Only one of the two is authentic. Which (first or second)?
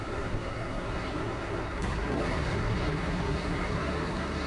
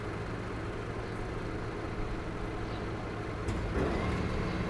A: second